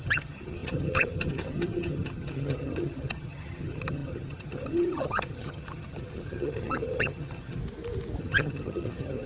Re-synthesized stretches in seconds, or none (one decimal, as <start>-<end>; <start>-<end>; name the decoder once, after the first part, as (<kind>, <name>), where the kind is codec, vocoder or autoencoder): 0.0-7.6 (vocoder, HiFi-GAN); 8.2-9.3